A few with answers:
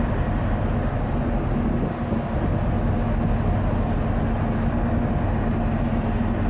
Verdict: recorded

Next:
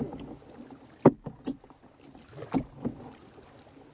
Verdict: recorded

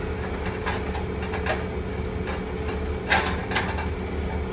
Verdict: recorded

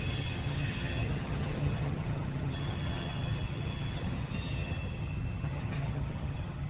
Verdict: remade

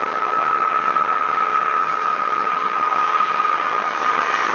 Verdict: remade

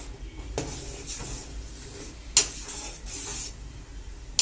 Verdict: recorded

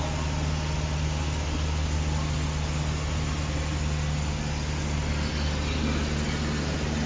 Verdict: recorded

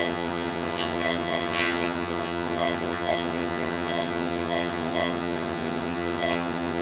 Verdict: remade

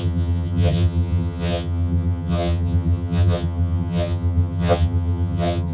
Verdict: remade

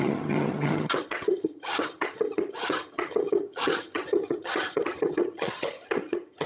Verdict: remade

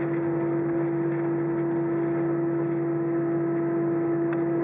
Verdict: recorded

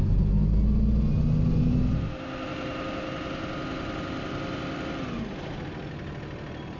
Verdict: recorded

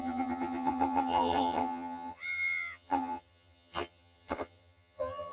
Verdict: remade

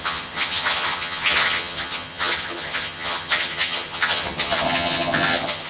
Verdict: remade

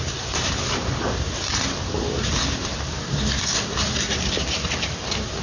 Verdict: recorded